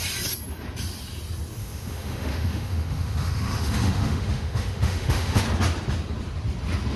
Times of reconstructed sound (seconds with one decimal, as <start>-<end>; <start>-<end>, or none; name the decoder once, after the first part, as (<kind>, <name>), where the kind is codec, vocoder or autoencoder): 1.6-5.4 (autoencoder, DAC-VAE)